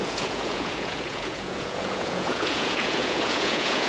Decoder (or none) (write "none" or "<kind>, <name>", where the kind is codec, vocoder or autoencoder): vocoder, Vocos